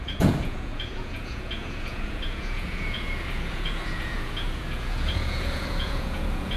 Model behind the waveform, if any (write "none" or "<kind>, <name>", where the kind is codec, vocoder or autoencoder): vocoder, Vocos